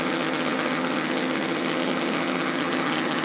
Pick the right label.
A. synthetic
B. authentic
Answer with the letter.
A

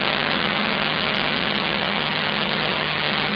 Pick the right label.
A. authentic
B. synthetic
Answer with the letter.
B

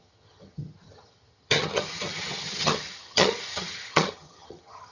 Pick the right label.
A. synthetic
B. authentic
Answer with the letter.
A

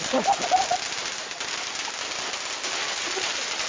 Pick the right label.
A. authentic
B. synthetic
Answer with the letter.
A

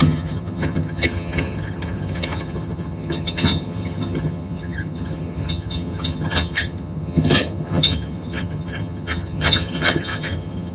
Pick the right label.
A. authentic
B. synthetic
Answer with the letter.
B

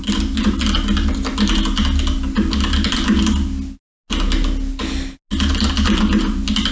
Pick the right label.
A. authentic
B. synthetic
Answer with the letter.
A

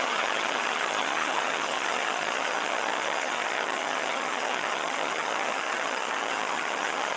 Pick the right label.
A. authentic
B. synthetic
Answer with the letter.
B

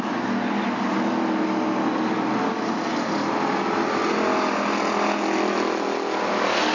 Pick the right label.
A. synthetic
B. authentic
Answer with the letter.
B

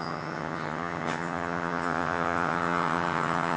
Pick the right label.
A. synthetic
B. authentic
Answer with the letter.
A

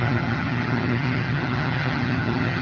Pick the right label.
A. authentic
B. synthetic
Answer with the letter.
B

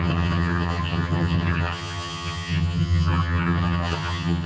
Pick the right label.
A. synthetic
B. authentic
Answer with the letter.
A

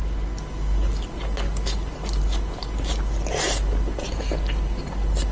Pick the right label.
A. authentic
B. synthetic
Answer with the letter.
A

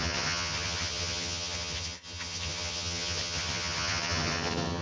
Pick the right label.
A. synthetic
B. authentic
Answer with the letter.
A